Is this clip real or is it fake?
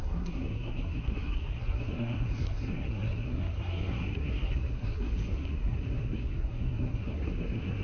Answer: fake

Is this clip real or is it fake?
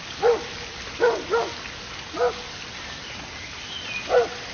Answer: real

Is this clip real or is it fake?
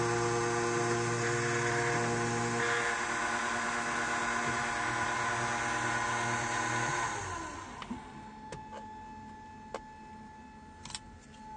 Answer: real